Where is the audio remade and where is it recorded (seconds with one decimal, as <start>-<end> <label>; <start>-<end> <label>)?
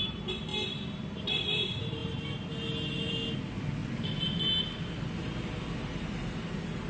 0.0-6.9 recorded